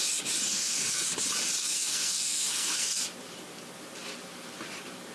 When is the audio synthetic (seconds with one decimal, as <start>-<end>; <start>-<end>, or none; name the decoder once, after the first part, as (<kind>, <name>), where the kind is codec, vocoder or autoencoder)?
0.5-1.1 (codec, SNAC); 1.6-3.0